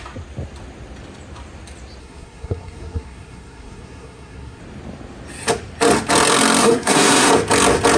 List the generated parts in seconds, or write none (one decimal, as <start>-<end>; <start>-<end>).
2.0-4.6; 6.6-7.3